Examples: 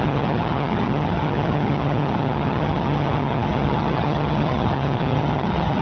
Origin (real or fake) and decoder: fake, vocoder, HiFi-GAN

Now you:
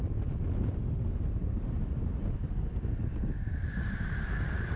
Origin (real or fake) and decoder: real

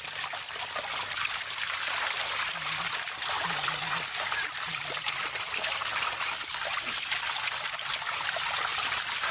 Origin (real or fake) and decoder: real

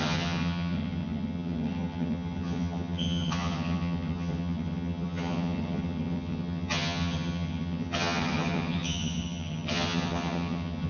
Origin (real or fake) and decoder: fake, vocoder, HiFi-GAN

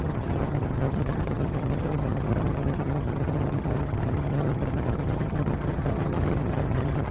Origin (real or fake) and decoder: fake, vocoder, HiFi-GAN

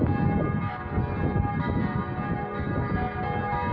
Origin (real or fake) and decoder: real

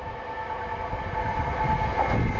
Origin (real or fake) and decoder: real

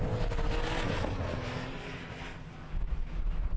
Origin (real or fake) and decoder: real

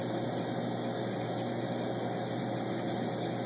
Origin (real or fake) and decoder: real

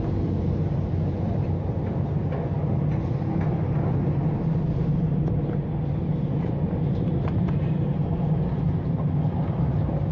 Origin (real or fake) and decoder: real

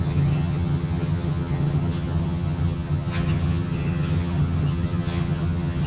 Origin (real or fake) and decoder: fake, vocoder, HiFi-GAN